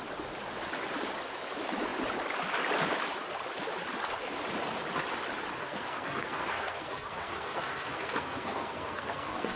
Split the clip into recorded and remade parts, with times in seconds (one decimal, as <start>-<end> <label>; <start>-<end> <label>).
0.0-5.6 recorded; 5.6-9.6 remade